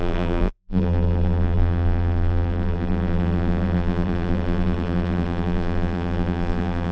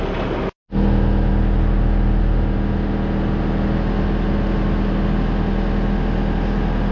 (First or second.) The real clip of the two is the second